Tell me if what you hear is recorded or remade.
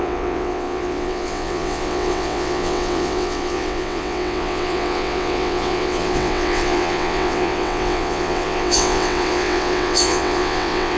remade